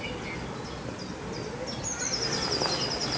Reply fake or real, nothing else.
real